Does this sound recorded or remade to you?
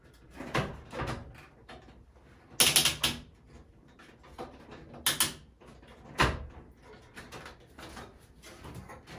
recorded